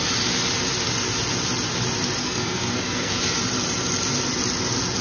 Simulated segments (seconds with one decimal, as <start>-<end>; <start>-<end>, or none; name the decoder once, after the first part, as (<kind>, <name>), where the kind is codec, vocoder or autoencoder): 2.2-3.2 (codec, SNAC)